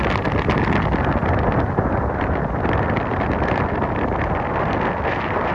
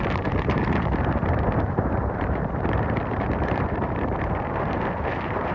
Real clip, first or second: first